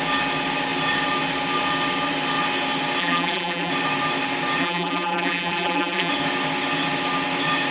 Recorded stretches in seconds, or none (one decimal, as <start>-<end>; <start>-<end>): 0.0-3.0; 3.7-4.6; 6.1-7.7